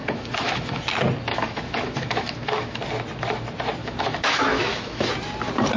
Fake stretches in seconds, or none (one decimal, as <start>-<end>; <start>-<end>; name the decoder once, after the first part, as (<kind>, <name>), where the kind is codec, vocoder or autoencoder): 0.0-0.8 (autoencoder, DAC-VAE); 1.3-2.8; 3.8-5.1